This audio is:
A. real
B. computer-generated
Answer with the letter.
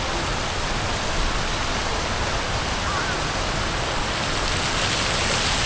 A